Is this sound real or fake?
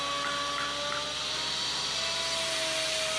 real